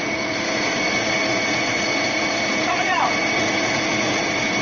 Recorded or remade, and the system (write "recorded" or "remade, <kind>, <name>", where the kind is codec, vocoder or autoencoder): remade, vocoder, Vocos